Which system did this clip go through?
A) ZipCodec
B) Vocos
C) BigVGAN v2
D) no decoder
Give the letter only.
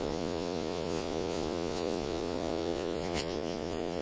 B